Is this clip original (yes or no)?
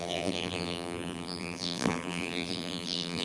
no